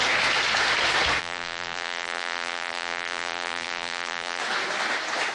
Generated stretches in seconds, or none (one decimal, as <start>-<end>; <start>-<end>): 1.2-4.4